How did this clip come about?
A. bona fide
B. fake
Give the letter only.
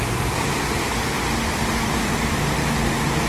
A